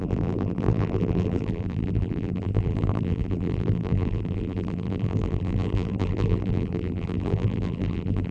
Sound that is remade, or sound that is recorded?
remade